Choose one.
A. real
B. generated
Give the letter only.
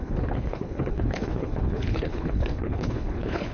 B